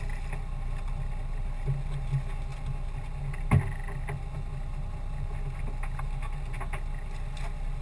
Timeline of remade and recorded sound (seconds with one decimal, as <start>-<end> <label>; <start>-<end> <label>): 0.0-7.8 recorded